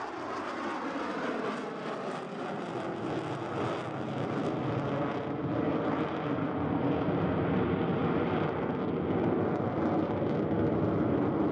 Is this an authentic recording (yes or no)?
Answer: yes